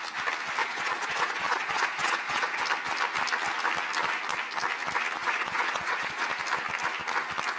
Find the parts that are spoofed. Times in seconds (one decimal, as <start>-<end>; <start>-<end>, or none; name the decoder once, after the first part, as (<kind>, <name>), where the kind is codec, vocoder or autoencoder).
0.6-2.6 (vocoder, Vocos); 5.2-6.3